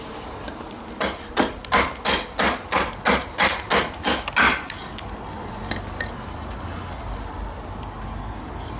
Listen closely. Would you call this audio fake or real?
real